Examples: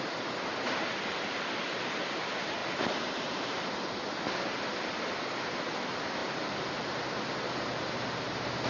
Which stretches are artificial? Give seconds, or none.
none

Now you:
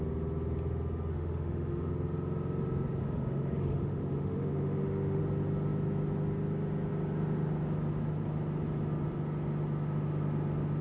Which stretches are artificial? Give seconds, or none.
1.1-1.9 (autoencoder, DAC-VAE); 3.0-5.2

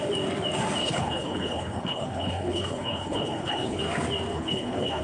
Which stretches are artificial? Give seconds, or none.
0.8-3.8 (codec, HILCodec); 4.3-5.0

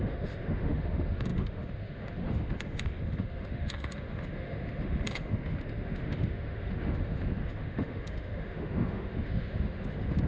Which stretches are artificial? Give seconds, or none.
0.0-10.3 (autoencoder, DAC-VAE)

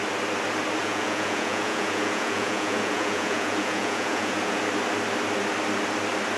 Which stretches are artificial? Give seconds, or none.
0.8-4.6 (vocoder, Vocos)